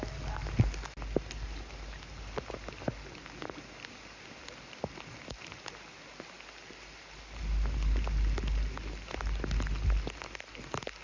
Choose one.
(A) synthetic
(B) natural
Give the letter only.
B